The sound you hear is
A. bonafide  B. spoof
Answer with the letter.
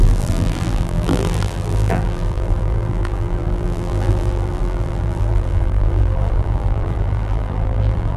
B